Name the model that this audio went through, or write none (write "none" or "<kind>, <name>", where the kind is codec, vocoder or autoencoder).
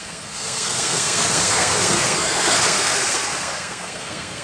codec, SNAC